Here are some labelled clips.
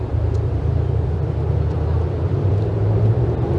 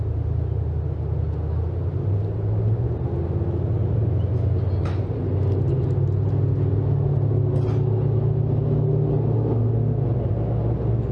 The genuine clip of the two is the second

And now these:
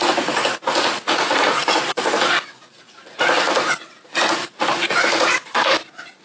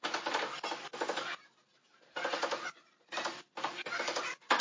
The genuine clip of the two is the second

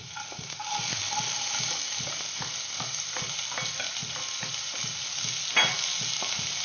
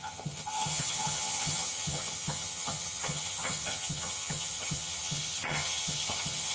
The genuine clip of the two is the first